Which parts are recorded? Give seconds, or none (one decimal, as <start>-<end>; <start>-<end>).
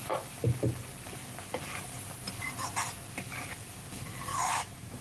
0.0-4.3